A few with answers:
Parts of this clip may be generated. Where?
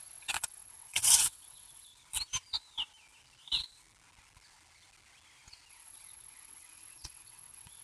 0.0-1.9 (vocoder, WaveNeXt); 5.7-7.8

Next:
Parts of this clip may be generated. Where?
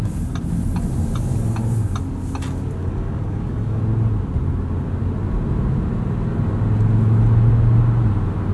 2.8-3.8 (codec, DAC)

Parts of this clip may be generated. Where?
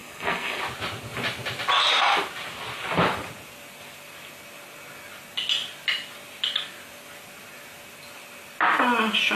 0.0-0.6 (codec, SNAC)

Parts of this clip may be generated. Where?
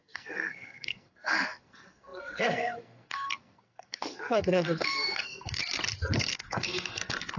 0.0-5.6 (codec, SNAC); 6.2-7.4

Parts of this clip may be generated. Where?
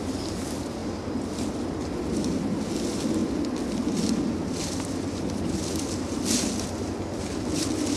none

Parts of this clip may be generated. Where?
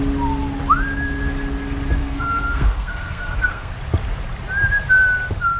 2.0-3.7 (codec, SNAC)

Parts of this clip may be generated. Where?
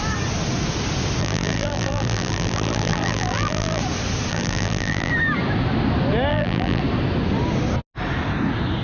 1.2-3.8 (vocoder, BigVGAN v2); 4.3-5.1; 6.3-6.8